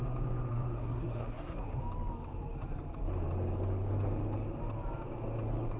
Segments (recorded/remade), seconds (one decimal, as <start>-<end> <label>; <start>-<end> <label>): 0.0-0.5 recorded; 0.5-1.8 remade; 1.8-5.8 recorded